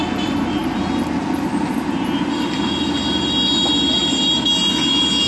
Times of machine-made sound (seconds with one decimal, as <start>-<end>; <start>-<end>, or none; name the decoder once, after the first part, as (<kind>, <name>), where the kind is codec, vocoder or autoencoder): none

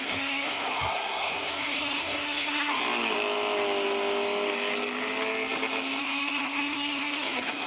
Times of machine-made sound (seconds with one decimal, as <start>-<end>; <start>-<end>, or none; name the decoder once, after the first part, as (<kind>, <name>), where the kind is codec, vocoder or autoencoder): 0.0-2.8 (codec, SNAC); 6.0-7.7

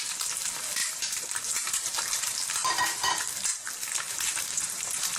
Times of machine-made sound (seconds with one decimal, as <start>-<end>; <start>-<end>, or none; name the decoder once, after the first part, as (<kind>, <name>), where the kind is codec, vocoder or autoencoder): 0.0-3.5 (vocoder, BigVGAN v2); 4.1-5.2

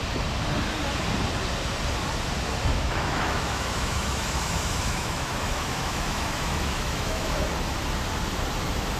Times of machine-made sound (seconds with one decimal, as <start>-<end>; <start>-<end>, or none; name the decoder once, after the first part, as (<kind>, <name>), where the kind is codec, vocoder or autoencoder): 2.7-7.5 (autoencoder, DAC-VAE)

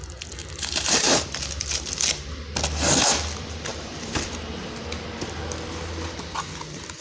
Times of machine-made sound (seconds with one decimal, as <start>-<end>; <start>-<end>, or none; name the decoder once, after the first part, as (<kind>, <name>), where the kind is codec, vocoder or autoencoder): 0.4-2.3 (vocoder, BigVGAN v2); 3.7-4.5

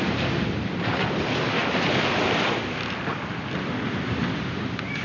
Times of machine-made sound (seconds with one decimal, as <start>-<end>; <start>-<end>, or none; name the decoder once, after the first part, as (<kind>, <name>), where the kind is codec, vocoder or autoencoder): none

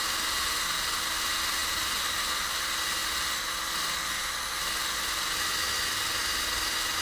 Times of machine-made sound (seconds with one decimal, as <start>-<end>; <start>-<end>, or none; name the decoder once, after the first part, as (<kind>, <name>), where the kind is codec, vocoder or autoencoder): none

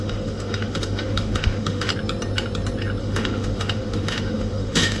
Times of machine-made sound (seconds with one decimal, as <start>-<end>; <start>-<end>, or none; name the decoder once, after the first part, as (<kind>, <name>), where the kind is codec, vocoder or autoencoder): 0.0-1.9 (autoencoder, DAC-VAE); 3.0-5.0